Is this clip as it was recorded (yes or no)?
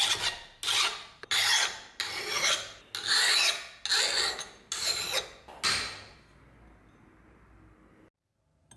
yes